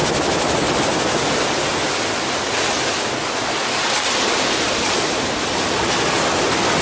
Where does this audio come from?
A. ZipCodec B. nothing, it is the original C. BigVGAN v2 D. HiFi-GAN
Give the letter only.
B